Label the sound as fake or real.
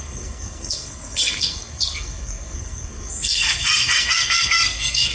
fake